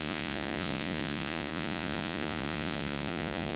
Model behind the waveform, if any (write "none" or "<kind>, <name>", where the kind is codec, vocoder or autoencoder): vocoder, Vocos